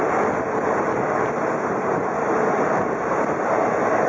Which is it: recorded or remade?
recorded